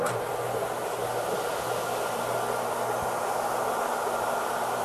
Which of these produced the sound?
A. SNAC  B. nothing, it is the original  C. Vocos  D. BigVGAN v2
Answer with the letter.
B